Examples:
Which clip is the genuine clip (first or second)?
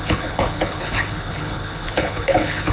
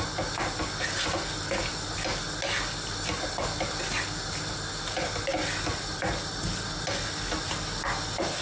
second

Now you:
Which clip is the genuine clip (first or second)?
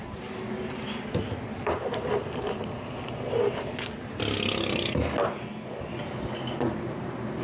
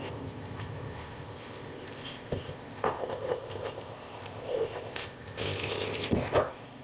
first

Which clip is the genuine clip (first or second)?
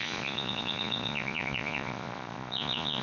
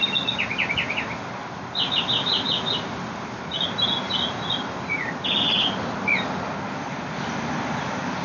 second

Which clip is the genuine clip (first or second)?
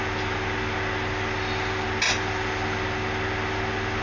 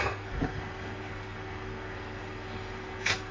first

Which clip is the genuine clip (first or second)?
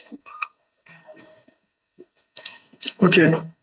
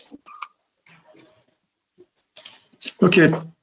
second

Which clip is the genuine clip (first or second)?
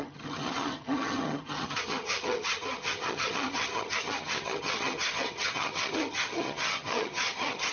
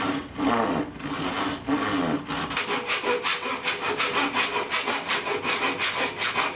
second